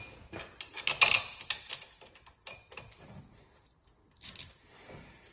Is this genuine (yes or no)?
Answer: yes